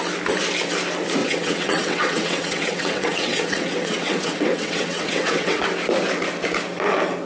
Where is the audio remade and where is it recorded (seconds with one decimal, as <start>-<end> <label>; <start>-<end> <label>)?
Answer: 0.0-1.2 recorded; 1.2-5.6 remade; 5.6-7.3 recorded